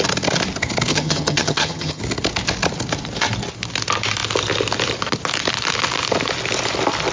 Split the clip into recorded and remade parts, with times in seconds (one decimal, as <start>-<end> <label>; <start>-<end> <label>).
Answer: 0.0-0.9 recorded; 0.9-2.0 remade; 2.0-7.1 recorded